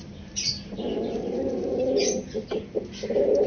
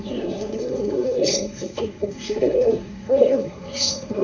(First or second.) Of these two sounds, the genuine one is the first